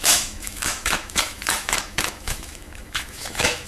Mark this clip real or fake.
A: fake